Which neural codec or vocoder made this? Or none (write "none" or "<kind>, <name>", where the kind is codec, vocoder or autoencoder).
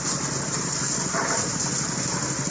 none